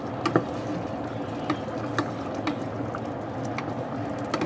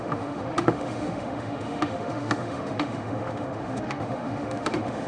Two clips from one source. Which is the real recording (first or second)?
first